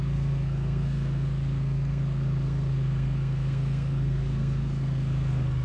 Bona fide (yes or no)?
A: no